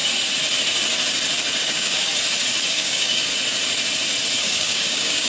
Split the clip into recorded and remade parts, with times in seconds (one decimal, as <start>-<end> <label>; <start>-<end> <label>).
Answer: 0.0-1.6 recorded; 1.6-2.1 remade; 2.1-2.7 recorded; 2.7-3.3 remade; 3.3-4.4 recorded; 4.4-5.3 remade